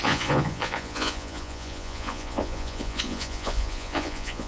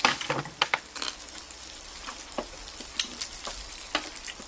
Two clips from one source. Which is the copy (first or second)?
first